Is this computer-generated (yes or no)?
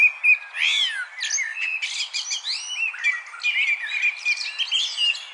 no